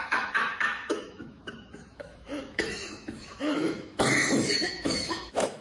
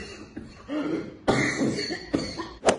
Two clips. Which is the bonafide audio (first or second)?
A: second